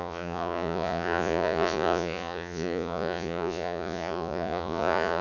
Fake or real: fake